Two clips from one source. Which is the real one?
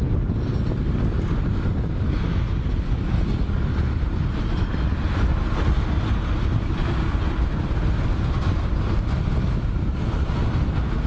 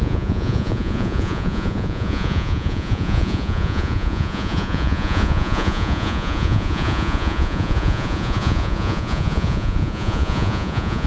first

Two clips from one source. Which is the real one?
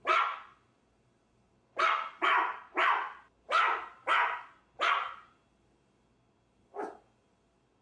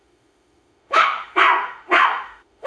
first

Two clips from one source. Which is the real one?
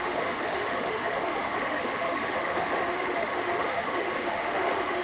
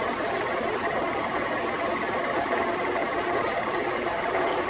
second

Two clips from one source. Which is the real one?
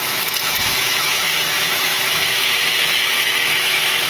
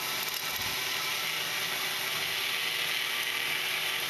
second